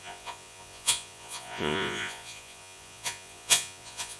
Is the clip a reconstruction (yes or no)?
yes